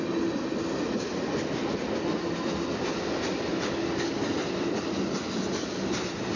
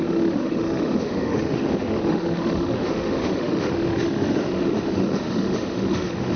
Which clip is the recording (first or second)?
first